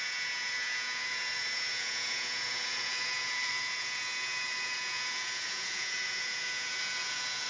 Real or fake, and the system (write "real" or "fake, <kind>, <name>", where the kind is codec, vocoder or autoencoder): fake, vocoder, Vocos